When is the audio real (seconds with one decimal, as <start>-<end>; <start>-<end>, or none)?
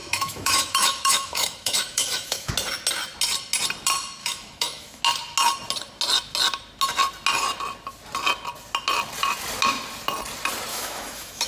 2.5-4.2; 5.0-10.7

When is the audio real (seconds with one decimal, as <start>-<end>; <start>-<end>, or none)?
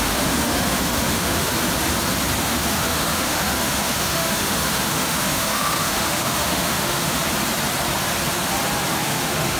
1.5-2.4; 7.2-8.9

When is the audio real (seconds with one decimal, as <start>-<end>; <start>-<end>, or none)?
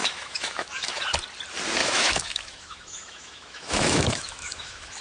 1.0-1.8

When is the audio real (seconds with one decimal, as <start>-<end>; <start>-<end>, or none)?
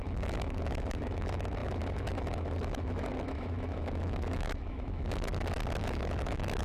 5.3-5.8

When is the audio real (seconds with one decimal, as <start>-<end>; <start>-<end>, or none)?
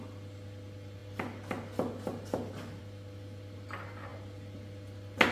0.0-5.3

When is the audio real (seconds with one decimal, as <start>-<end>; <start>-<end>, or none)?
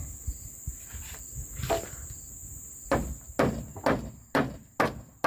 0.0-5.3